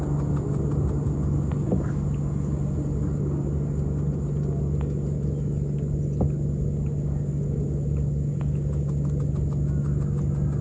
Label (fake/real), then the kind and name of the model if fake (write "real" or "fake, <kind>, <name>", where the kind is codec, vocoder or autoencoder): real